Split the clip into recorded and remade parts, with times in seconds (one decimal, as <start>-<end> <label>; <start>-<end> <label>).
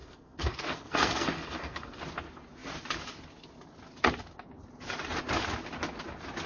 0.0-2.0 remade; 2.0-6.5 recorded